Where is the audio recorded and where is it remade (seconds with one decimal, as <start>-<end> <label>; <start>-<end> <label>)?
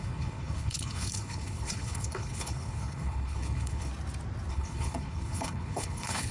0.0-3.9 remade; 3.9-4.5 recorded; 4.5-6.3 remade